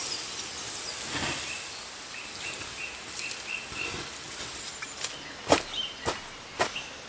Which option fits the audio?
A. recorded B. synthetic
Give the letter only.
A